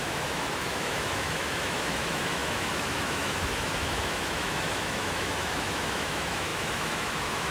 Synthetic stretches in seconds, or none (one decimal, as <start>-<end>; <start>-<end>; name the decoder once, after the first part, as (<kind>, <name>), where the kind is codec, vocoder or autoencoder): 0.0-7.5 (autoencoder, DAC-VAE)